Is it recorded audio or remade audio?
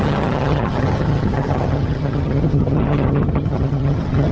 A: remade